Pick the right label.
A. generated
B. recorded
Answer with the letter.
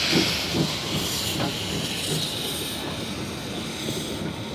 B